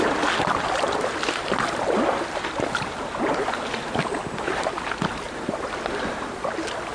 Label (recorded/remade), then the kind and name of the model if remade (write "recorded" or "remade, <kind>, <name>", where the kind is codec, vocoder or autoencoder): recorded